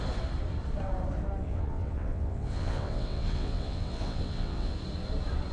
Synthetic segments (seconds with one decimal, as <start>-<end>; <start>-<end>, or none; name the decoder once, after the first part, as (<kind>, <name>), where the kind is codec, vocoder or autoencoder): 1.4-4.7 (vocoder, WaveNeXt)